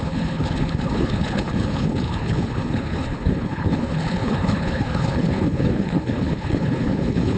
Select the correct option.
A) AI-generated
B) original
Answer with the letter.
A